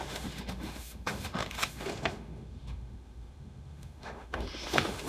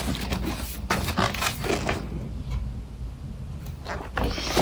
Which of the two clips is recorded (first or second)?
second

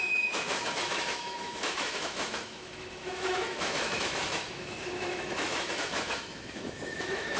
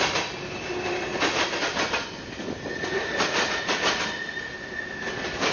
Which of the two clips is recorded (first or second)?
second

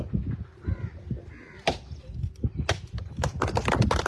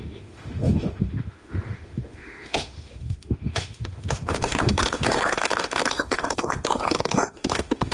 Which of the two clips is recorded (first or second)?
first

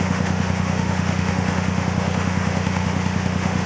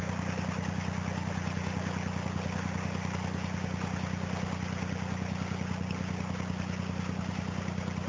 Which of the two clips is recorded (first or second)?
second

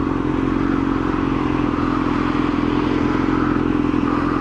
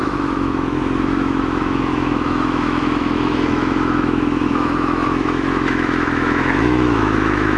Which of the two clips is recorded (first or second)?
first